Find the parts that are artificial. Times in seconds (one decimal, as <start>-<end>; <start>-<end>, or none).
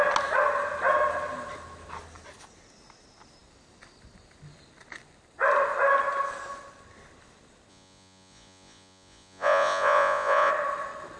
7.7-10.5